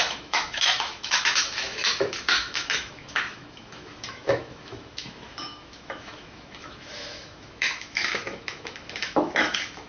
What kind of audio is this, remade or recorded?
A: remade